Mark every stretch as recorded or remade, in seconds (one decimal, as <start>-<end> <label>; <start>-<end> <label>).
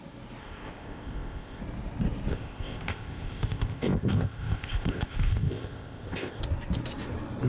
0.0-0.4 recorded; 0.4-1.6 remade; 1.6-2.3 recorded; 2.3-6.4 remade; 6.4-7.5 recorded